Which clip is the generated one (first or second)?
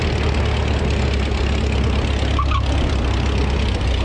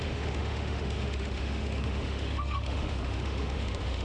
second